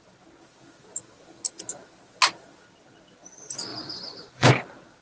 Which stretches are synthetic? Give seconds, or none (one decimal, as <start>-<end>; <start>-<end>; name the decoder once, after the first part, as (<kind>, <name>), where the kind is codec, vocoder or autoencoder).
3.7-4.5 (vocoder, Vocos)